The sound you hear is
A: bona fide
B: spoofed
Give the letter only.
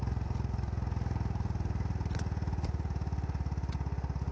A